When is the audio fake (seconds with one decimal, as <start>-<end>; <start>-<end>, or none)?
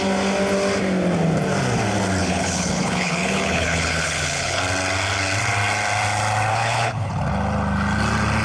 2.2-4.6; 6.5-7.2